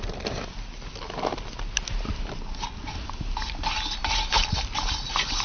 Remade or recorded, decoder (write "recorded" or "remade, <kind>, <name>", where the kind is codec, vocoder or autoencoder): recorded